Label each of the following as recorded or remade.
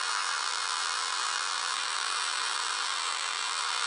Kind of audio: remade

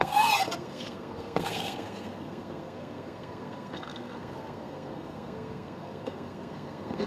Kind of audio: remade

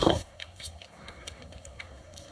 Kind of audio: remade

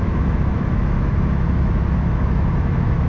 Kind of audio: remade